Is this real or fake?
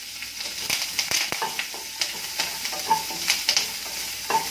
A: real